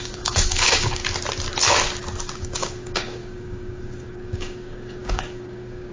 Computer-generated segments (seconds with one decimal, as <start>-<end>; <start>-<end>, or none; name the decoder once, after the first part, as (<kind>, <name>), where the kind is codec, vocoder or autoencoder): 0.0-1.0 (codec, DAC); 2.4-5.9

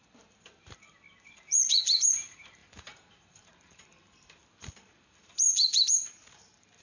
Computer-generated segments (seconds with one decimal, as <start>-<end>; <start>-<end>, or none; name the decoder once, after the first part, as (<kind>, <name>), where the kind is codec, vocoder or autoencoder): 0.0-6.8 (vocoder, BigVGAN v2)

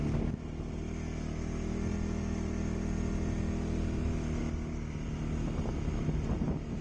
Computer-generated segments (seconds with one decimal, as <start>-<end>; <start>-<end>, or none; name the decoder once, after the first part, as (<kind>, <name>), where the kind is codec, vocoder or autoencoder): none

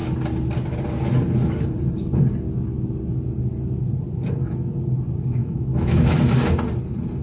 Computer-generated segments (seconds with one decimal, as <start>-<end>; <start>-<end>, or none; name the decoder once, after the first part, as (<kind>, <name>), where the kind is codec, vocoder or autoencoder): 5.4-6.2 (autoencoder, DAC-VAE)

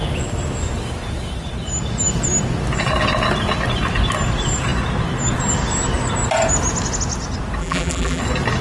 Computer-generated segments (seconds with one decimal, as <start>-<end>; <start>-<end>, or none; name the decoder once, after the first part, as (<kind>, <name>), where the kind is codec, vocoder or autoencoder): 7.6-8.2 (vocoder, BigVGAN v2)

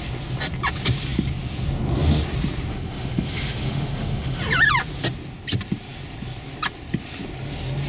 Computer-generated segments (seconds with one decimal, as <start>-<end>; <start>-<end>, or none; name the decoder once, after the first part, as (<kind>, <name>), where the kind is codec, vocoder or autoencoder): 2.7-4.4 (autoencoder, DAC-VAE)